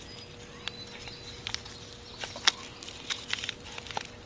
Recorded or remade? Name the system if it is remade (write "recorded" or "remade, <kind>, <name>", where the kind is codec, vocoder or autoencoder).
recorded